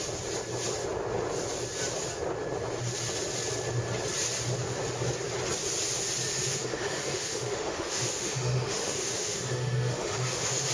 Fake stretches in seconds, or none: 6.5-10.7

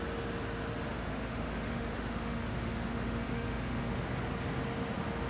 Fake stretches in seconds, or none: 0.9-4.1